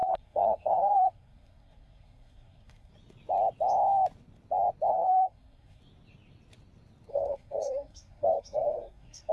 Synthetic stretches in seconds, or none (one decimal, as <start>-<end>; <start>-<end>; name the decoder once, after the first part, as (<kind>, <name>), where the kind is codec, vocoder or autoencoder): 0.0-2.9 (codec, SNAC); 4.9-5.8; 7.1-9.3